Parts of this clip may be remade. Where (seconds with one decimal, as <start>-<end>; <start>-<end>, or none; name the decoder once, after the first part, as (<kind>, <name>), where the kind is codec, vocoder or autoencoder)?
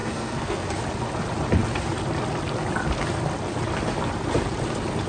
0.0-0.8 (codec, SNAC)